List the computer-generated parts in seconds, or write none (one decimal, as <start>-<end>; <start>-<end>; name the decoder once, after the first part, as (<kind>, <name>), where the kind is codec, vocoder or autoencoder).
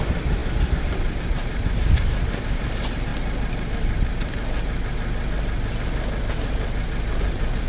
0.0-3.1 (vocoder, BigVGAN v2)